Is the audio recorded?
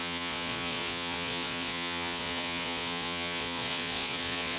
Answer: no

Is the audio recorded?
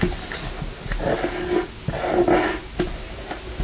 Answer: yes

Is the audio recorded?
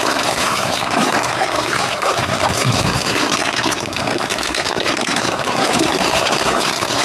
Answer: no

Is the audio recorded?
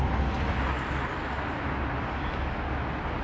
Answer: yes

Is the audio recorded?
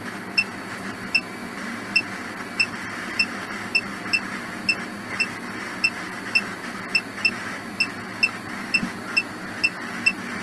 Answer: yes